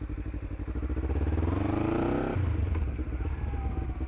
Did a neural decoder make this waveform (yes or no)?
no